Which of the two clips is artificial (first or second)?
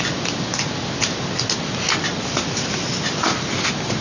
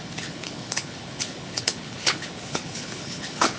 second